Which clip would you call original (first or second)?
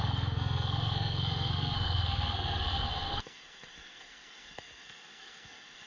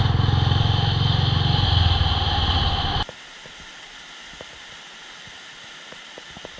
second